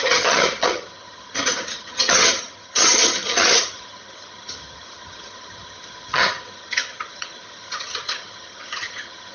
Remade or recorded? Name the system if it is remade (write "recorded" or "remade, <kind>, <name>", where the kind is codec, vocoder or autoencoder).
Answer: remade, vocoder, HiFi-GAN